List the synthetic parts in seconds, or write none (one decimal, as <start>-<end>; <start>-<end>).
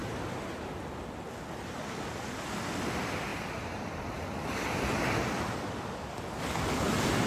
none